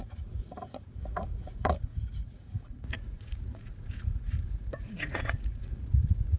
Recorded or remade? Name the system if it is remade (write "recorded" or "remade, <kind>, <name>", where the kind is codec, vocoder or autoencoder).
remade, vocoder, Vocos